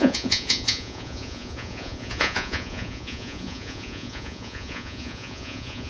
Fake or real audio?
fake